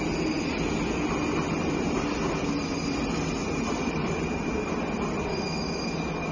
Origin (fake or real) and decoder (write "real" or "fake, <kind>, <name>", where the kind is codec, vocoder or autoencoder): real